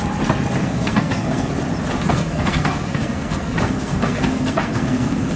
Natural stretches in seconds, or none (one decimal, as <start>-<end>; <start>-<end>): 0.0-0.6; 1.5-2.1